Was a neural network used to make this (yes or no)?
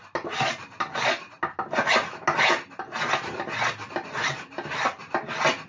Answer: no